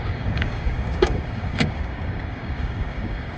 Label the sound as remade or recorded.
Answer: remade